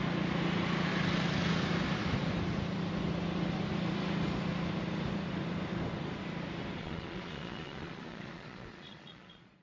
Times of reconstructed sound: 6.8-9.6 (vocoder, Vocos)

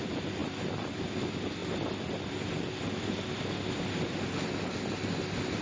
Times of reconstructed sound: none

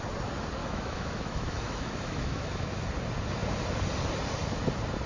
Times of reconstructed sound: 0.6-2.8 (autoencoder, DAC-VAE)

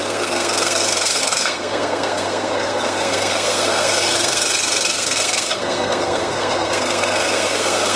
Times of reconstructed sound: 0.0-8.0 (codec, SNAC)

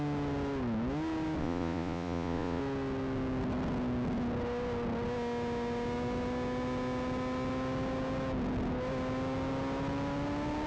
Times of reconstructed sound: 1.4-2.6 (vocoder, Vocos)

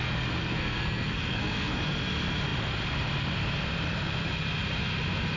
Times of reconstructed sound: 0.4-1.8 (codec, SNAC)

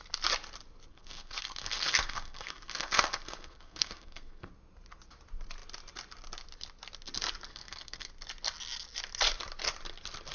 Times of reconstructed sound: 0.9-4.5 (codec, SNAC); 7.5-8.1

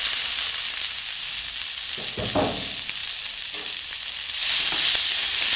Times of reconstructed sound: 3.0-4.0 (vocoder, BigVGAN v2); 4.4-5.6